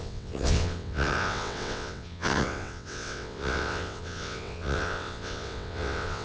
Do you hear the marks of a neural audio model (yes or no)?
yes